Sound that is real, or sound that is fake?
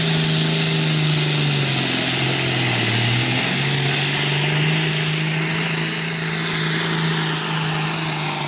real